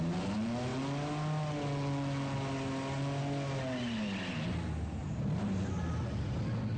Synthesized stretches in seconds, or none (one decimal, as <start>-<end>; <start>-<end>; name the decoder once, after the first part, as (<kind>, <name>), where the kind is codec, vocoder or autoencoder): 5.0-5.8 (vocoder, BigVGAN v2)